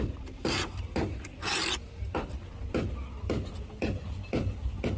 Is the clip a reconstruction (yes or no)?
no